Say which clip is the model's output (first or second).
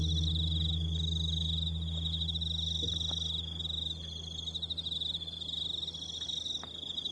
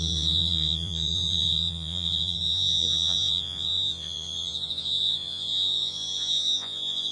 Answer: second